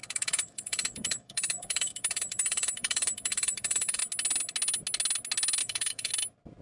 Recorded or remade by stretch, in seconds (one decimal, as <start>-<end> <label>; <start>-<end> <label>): 0.0-4.0 remade; 4.0-5.6 recorded; 5.6-6.1 remade; 6.1-6.6 recorded